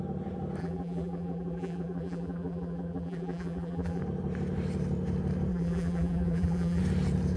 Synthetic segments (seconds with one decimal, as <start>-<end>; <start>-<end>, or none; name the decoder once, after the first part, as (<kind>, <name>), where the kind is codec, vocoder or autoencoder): 0.6-4.0 (vocoder, BigVGAN v2); 5.5-6.8